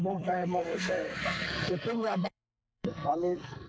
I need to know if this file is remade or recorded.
remade